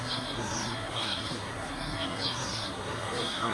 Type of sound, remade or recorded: remade